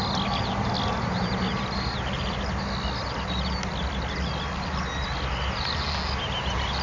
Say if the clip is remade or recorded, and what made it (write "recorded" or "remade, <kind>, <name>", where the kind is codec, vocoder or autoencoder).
recorded